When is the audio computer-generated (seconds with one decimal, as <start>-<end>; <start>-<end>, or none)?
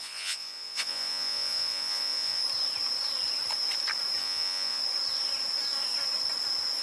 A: 0.0-2.4; 4.2-4.8